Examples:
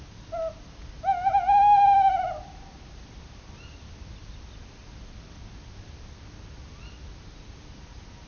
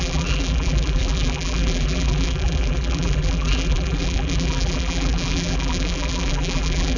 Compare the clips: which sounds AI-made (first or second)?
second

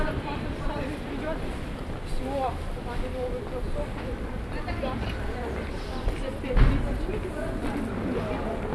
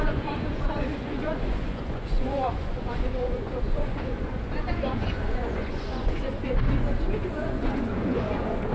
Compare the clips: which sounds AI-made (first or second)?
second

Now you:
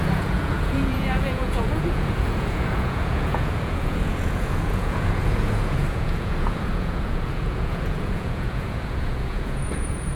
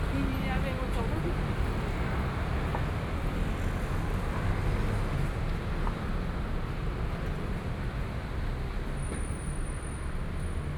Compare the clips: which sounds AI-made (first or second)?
first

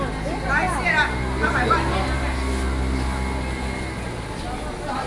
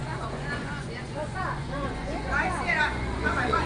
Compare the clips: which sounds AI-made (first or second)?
second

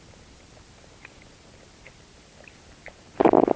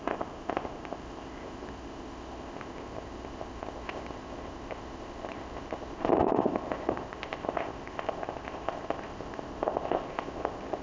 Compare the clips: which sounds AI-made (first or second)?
second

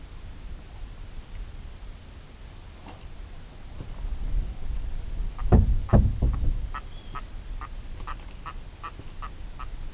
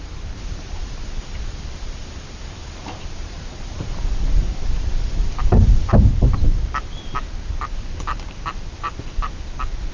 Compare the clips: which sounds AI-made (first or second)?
second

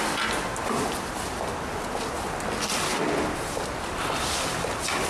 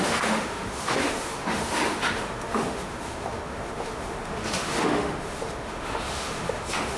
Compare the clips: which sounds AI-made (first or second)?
second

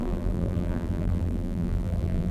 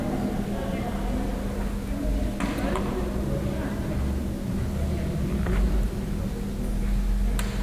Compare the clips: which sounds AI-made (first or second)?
first